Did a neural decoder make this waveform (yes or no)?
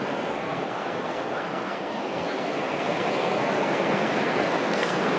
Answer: yes